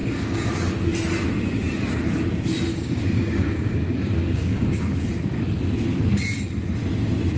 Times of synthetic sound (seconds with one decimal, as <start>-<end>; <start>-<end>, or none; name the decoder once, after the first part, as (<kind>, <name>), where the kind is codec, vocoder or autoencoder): 0.0-0.5 (codec, DAC); 2.7-5.0